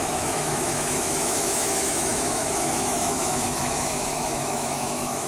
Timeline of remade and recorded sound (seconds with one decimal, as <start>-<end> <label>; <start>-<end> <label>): 0.0-5.3 remade